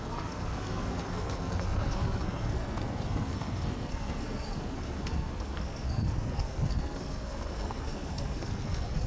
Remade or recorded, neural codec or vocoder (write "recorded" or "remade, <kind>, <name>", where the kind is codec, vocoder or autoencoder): remade, codec, SNAC